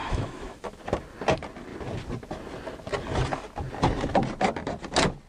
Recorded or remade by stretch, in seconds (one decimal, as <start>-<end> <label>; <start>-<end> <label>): 0.0-0.8 remade; 0.8-5.3 recorded